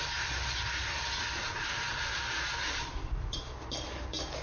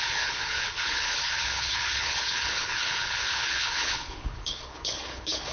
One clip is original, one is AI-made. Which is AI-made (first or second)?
second